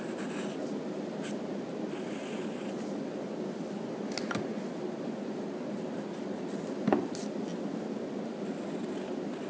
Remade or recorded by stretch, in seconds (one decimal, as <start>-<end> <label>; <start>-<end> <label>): 0.0-9.5 recorded

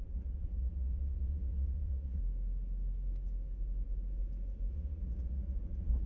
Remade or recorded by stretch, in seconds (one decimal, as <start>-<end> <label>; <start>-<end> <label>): 0.0-2.2 remade; 2.2-4.7 recorded; 4.7-6.1 remade

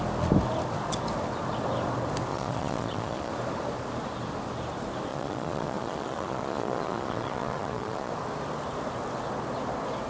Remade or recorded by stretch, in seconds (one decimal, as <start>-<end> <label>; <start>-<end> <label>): 0.0-2.3 recorded; 2.3-3.3 remade; 3.3-5.1 recorded; 5.1-8.1 remade; 8.1-10.1 recorded

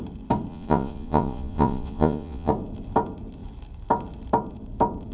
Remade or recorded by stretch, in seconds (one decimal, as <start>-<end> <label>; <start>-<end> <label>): 0.0-0.5 recorded; 0.5-2.5 remade; 2.5-5.1 recorded

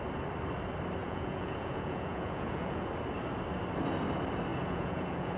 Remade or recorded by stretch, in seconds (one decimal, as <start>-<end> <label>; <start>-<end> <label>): 0.0-1.0 recorded; 1.0-2.9 remade; 2.9-4.5 recorded; 4.5-5.4 remade

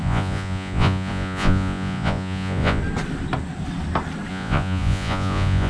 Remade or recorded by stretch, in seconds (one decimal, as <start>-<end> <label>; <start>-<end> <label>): 0.0-2.8 remade; 2.8-4.3 recorded; 4.3-5.7 remade

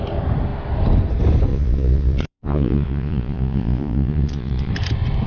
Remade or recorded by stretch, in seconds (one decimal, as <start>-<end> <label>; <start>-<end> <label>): 0.0-1.5 recorded; 1.5-4.7 remade; 4.7-5.3 recorded

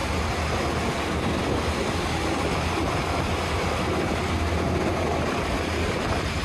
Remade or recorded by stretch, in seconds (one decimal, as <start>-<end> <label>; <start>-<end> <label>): 0.0-6.4 recorded